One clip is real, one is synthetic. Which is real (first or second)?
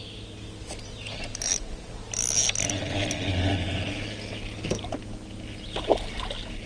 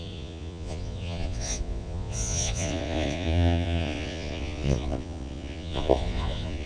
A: first